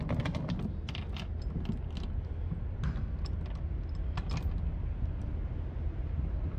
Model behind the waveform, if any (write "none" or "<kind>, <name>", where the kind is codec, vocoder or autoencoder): none